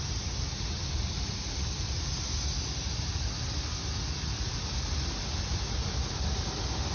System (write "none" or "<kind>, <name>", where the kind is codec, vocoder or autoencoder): none